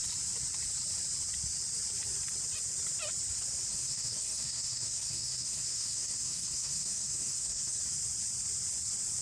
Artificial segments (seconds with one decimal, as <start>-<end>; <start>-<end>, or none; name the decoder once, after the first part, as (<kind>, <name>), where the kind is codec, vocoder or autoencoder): 3.7-7.8 (codec, SNAC)

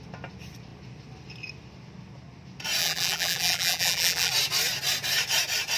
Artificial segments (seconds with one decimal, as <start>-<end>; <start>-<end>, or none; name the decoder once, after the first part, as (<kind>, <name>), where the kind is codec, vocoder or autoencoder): 2.8-4.3 (vocoder, BigVGAN v2)

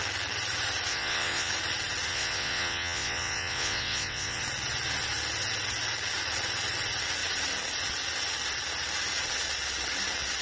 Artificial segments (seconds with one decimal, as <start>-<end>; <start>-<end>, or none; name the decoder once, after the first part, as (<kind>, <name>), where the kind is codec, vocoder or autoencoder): 0.9-1.5 (vocoder, WaveNeXt); 2.1-4.4

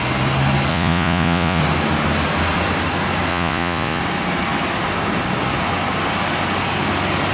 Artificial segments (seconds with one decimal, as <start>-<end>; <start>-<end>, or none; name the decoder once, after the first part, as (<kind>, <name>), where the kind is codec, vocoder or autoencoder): 0.7-1.6 (vocoder, Vocos); 3.3-4.0

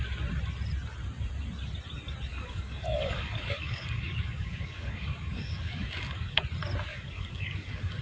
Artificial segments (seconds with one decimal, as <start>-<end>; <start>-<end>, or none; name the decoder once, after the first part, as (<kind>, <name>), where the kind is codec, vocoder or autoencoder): 2.3-6.4 (codec, DAC); 6.9-8.0

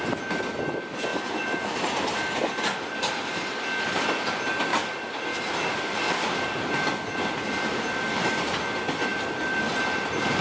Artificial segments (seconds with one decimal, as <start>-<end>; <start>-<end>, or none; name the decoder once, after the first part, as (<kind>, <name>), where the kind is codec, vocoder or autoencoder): 1.1-2.4 (vocoder, BigVGAN v2); 4.7-6.0